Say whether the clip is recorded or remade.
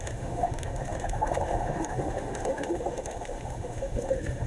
remade